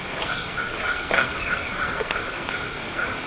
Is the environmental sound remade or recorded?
remade